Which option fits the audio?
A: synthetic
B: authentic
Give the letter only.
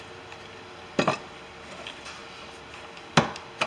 B